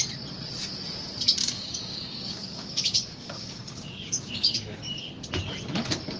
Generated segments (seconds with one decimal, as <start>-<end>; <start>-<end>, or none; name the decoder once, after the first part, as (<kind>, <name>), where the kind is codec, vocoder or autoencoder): 1.4-5.1 (codec, DAC)